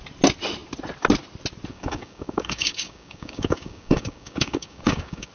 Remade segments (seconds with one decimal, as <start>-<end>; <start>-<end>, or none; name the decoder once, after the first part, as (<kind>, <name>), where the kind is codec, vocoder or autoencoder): 1.7-5.3 (codec, DAC)

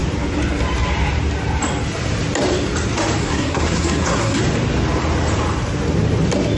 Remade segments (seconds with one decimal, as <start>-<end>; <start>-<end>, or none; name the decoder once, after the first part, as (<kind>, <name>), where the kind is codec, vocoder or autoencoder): 3.2-4.4 (codec, SNAC)

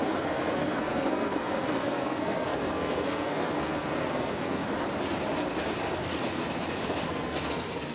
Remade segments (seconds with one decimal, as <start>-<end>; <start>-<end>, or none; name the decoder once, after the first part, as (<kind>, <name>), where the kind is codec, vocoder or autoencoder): 0.0-4.6 (codec, SNAC); 7.1-7.9